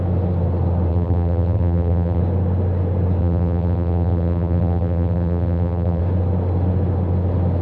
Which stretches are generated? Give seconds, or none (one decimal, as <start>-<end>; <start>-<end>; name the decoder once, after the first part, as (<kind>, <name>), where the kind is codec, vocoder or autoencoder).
0.9-2.2 (vocoder, BigVGAN v2); 3.2-6.0